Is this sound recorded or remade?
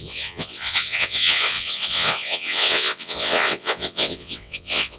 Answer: remade